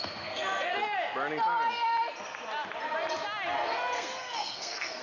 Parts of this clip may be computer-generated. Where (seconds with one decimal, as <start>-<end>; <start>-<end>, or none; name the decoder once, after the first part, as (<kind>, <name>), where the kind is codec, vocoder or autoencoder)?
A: 0.0-0.7 (codec, SNAC); 3.7-5.0